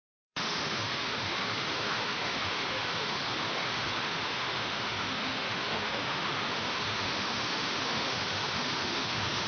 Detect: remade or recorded remade